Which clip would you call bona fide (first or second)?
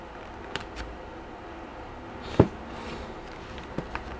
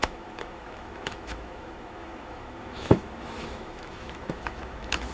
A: first